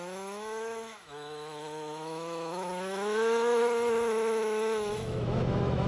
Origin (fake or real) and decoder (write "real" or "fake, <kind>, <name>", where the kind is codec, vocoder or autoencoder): fake, autoencoder, DAC-VAE